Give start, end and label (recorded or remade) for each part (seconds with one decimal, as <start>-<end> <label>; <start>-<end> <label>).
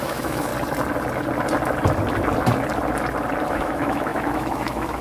0.0-0.5 remade; 0.5-3.5 recorded; 3.5-5.0 remade